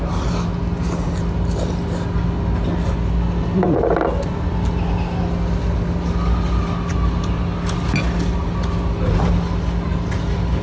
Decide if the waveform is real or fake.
real